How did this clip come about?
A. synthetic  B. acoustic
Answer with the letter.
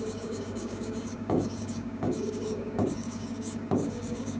A